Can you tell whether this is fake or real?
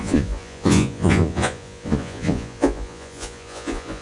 fake